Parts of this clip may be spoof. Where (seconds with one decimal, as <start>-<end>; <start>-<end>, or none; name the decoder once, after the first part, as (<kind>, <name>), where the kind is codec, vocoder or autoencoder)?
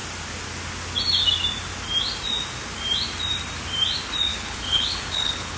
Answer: 4.3-5.6 (codec, HILCodec)